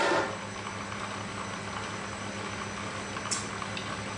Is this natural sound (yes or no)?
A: yes